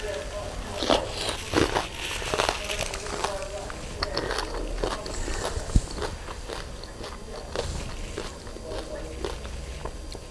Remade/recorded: recorded